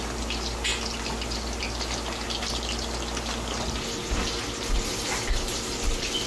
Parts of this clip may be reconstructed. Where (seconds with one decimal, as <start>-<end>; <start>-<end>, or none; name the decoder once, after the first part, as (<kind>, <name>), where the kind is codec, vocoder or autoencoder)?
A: none